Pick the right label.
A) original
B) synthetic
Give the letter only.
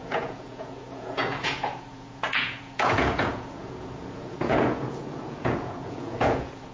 B